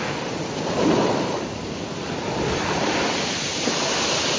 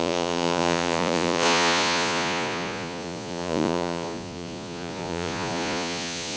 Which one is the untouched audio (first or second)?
first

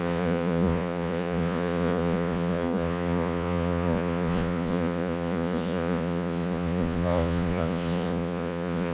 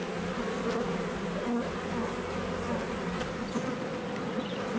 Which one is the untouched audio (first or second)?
second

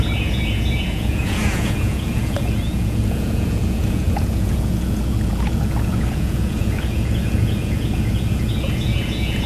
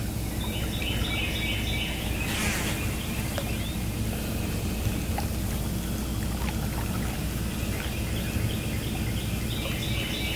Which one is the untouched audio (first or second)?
second